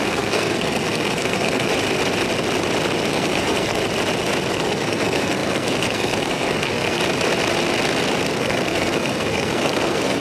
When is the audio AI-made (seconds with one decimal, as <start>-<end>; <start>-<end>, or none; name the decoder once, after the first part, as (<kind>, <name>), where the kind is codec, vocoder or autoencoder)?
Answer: 0.0-1.7 (codec, SNAC); 3.1-3.8; 4.5-7.0; 8.3-10.2